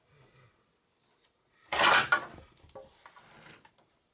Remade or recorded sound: recorded